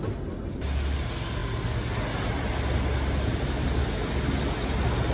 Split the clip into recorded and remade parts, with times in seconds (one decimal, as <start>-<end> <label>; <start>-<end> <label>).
0.0-5.1 recorded